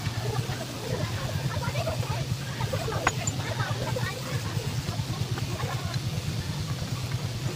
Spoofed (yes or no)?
no